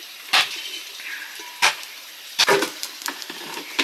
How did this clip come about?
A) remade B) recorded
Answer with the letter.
A